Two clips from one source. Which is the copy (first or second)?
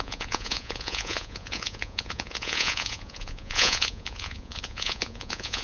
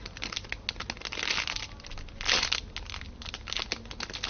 first